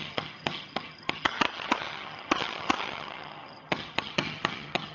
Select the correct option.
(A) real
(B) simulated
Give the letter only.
B